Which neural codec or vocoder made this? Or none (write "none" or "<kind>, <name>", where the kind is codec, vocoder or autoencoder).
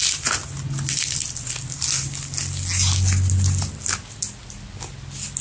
none